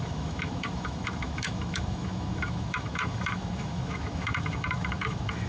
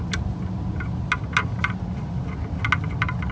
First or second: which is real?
second